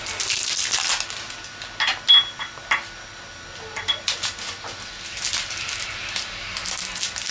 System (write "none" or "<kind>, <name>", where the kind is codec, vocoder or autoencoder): none